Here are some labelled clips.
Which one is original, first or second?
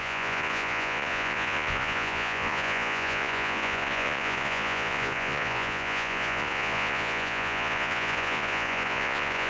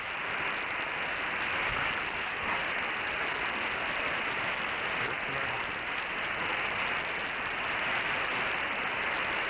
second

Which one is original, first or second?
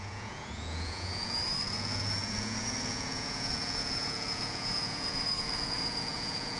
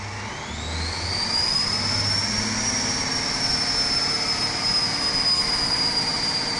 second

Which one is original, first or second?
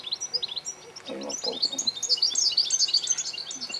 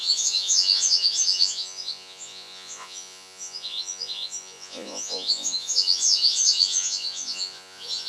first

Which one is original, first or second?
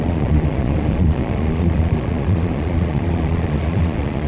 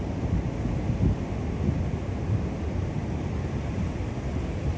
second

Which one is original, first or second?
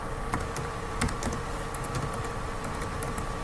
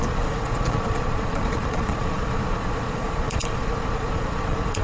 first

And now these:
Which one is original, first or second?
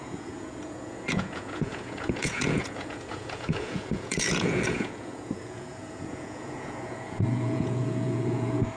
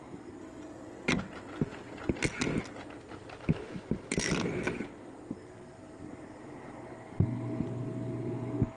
second